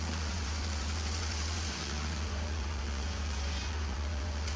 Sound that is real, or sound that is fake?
fake